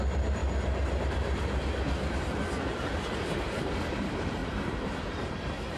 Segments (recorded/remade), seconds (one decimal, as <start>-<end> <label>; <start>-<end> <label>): 0.0-0.4 remade; 0.4-3.9 recorded; 3.9-5.8 remade

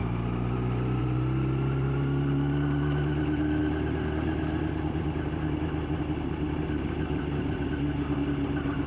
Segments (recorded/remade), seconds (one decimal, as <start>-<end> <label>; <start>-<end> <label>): 0.0-3.6 remade; 3.6-8.9 recorded

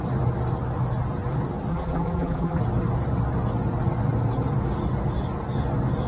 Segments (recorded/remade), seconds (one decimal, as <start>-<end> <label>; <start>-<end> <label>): 0.0-1.7 recorded; 1.7-2.6 remade; 2.6-6.1 recorded